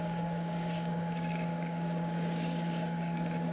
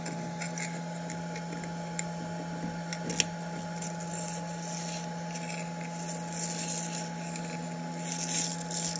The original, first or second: second